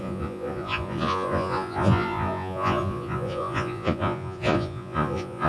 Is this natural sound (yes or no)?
no